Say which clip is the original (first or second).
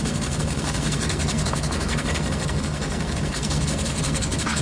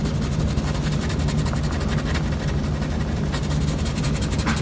second